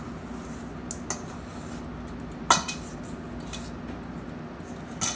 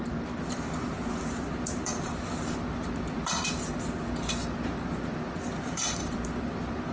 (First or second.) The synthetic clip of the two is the second